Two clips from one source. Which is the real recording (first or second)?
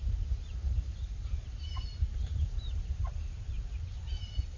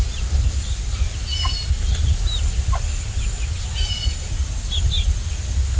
second